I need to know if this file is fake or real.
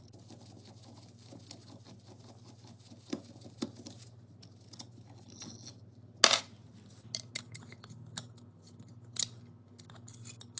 real